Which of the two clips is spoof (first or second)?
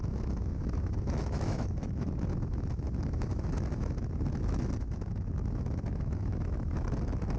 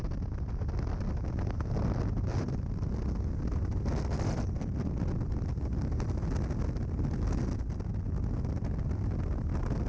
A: first